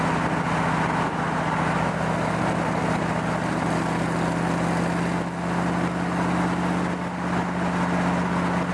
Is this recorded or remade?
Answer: recorded